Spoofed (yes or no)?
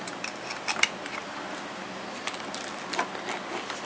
no